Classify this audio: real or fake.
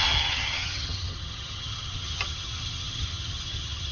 fake